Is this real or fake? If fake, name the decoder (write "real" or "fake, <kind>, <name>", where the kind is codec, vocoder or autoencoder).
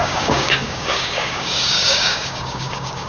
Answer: fake, codec, DAC